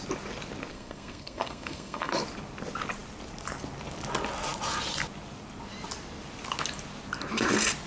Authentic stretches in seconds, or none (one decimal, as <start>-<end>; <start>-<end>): 0.0-0.7; 2.2-7.9